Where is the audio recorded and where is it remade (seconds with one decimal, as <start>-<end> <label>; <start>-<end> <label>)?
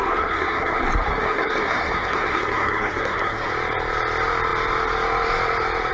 0.0-3.5 remade; 3.5-5.9 recorded